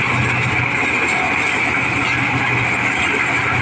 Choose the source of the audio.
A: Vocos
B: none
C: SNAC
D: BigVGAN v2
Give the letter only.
B